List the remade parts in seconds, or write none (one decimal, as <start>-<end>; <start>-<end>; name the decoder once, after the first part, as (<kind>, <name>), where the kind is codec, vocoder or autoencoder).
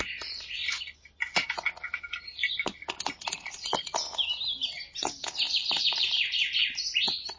0.0-0.6 (vocoder, BigVGAN v2); 1.9-2.8; 5.5-7.4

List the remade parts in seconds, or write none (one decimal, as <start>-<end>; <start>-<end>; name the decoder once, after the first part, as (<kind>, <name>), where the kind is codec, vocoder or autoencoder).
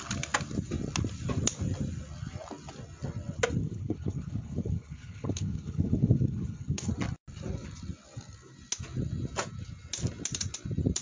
3.6-6.9 (codec, HILCodec)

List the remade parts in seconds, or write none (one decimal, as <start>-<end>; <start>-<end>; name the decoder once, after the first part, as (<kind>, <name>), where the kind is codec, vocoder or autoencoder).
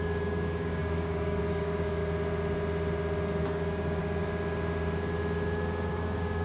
0.0-2.0 (codec, DAC); 3.4-4.0; 5.9-6.4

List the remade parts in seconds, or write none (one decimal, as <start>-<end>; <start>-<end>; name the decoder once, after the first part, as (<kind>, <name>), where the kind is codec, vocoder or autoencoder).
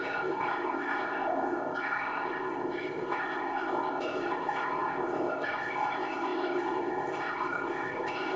0.0-8.4 (codec, ZipCodec)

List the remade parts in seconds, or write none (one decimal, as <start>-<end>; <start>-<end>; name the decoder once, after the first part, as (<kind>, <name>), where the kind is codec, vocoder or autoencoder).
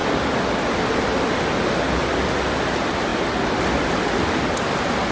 none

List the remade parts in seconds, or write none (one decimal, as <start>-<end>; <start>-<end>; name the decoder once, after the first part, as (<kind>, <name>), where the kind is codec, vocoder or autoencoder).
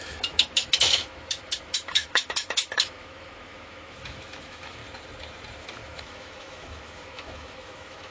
0.0-4.8 (autoencoder, DAC-VAE); 5.6-8.1